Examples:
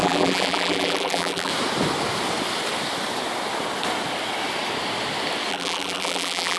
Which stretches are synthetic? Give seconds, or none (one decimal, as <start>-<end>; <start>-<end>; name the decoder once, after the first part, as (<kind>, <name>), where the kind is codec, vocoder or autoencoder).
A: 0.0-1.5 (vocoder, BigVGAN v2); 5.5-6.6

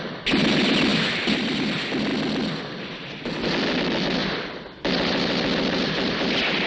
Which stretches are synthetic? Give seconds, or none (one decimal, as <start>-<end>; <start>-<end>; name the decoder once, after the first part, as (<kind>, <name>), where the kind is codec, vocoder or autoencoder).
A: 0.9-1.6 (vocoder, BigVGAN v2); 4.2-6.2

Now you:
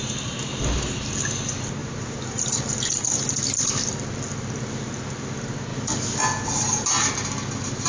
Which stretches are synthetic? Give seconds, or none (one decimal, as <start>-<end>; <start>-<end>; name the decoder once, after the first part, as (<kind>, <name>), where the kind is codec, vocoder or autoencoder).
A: 1.8-2.7 (vocoder, BigVGAN v2)